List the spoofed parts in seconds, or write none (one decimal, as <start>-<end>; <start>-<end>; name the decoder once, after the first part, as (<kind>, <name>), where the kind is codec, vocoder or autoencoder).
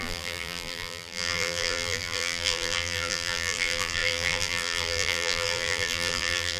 0.0-6.6 (vocoder, BigVGAN v2)